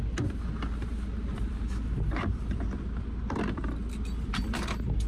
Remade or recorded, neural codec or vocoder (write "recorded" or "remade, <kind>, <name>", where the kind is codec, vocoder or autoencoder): recorded